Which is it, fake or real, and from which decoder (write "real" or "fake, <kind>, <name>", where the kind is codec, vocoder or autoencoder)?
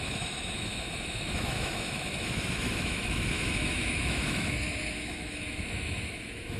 fake, autoencoder, DAC-VAE